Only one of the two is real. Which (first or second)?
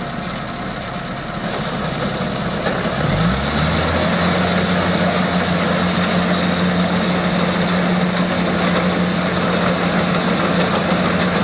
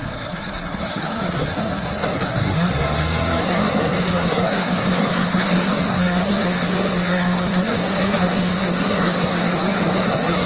first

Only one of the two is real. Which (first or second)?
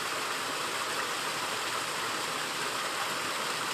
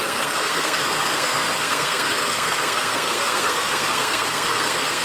first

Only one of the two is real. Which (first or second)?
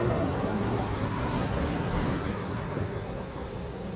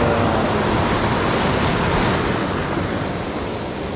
second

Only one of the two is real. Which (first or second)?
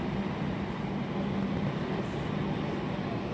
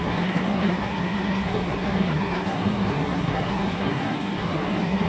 first